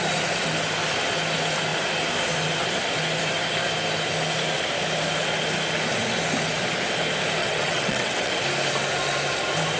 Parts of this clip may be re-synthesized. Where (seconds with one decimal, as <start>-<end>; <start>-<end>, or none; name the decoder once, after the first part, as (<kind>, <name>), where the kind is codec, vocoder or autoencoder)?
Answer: 7.4-8.3 (vocoder, WaveNeXt)